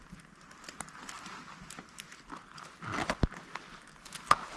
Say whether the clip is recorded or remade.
recorded